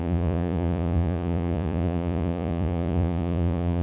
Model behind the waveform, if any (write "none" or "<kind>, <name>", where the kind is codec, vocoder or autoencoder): vocoder, Vocos